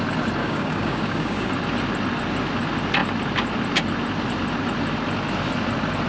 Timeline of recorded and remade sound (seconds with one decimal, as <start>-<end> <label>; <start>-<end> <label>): 0.0-0.4 recorded; 0.4-1.5 remade; 1.5-6.1 recorded

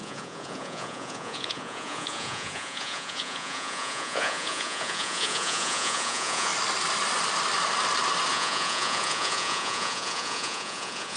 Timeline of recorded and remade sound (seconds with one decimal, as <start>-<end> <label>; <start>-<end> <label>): 0.0-6.5 remade; 6.5-8.3 recorded; 8.3-11.2 remade